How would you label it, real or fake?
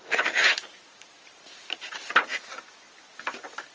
fake